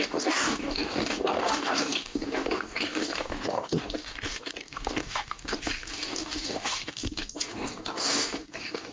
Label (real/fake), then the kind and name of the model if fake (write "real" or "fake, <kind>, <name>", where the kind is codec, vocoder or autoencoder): fake, codec, DAC